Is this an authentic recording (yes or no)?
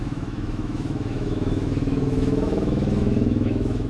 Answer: no